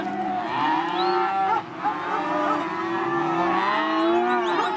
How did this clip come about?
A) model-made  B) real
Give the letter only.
B